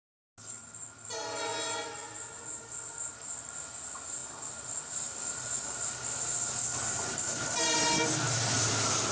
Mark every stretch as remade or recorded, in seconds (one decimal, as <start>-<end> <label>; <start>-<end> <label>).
0.0-9.1 recorded